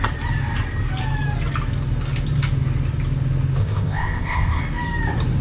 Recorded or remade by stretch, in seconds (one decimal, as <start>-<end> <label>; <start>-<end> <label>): 0.0-3.6 recorded; 3.6-4.6 remade; 4.6-5.4 recorded